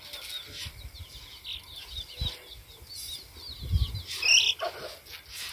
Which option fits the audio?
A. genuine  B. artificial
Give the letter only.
A